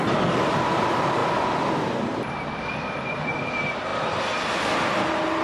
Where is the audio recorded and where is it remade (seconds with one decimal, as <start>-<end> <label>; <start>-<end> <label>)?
0.0-3.9 recorded; 3.9-4.5 remade; 4.5-5.4 recorded